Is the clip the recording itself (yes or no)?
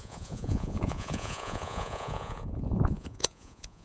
no